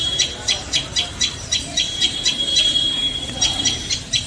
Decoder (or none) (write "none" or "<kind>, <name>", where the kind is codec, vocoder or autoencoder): vocoder, BigVGAN v2